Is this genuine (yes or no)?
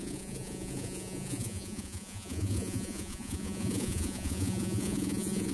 no